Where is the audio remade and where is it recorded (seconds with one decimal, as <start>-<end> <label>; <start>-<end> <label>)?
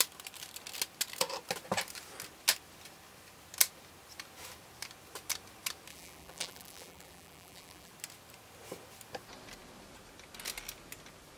0.0-5.9 recorded; 5.9-7.9 remade; 7.9-11.4 recorded